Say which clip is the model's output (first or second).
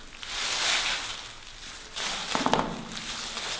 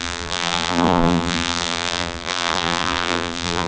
second